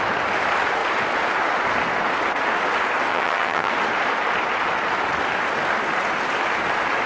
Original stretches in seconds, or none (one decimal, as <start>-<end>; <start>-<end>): 0.0-3.1; 3.7-7.1